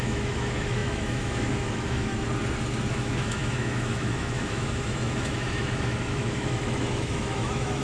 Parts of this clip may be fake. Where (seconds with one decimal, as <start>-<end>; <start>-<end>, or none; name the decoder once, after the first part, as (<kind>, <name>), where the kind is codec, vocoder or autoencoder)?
0.0-2.1 (autoencoder, DAC-VAE); 2.9-7.8